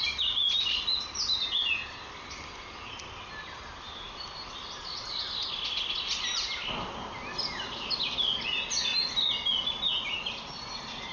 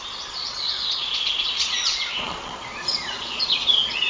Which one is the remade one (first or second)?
second